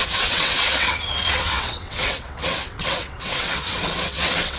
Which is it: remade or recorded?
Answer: remade